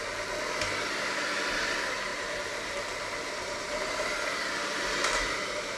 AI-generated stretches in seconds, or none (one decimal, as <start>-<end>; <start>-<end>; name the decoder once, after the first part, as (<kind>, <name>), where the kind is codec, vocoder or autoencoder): 2.1-5.8 (vocoder, BigVGAN v2)